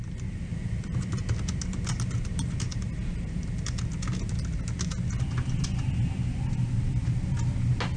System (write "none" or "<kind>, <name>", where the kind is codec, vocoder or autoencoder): none